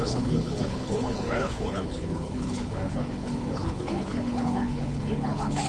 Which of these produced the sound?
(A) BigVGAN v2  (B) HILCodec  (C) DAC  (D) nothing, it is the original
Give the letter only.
B